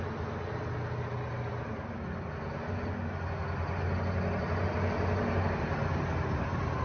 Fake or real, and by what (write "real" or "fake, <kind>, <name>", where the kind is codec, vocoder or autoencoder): real